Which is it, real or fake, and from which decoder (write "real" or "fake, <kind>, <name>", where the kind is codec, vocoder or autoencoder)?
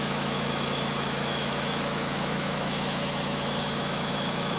fake, autoencoder, DAC-VAE